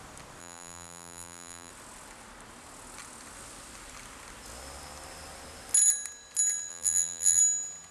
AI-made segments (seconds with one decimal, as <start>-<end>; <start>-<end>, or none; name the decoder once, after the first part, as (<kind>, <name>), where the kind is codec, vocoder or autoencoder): 0.4-1.7 (vocoder, BigVGAN v2); 6.7-7.4